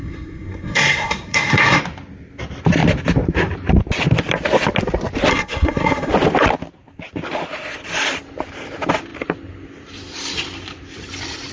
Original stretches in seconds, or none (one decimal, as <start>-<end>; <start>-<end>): 1.8-5.3; 6.1-11.5